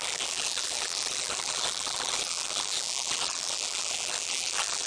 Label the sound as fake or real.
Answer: fake